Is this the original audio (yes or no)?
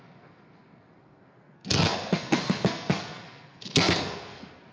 no